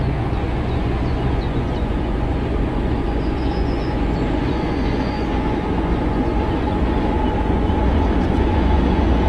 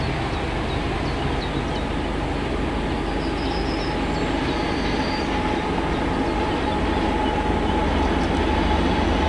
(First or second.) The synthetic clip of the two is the first